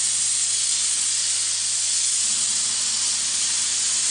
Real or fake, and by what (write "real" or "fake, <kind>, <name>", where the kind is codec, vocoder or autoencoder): real